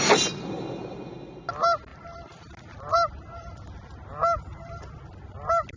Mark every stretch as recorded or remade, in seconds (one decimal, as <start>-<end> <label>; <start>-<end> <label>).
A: 0.0-1.9 recorded; 1.9-2.5 remade; 2.5-5.8 recorded